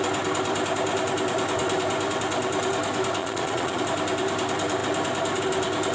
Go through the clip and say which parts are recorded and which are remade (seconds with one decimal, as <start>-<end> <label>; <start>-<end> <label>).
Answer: 0.0-3.2 recorded; 3.2-3.8 remade; 3.8-5.9 recorded